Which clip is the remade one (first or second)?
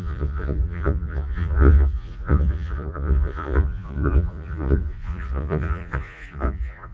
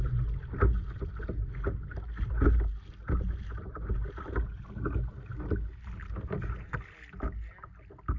first